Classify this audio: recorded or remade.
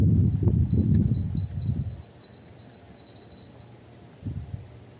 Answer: recorded